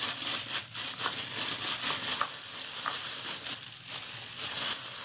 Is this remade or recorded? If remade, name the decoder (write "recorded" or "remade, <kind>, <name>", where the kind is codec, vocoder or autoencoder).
recorded